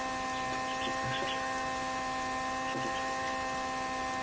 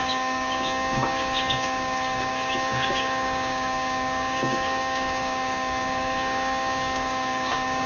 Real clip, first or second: first